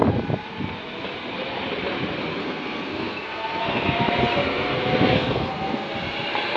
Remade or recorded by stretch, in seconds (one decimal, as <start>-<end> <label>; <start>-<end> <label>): 0.0-2.4 recorded; 2.4-4.0 remade; 4.0-4.4 recorded; 4.4-5.9 remade; 5.9-6.6 recorded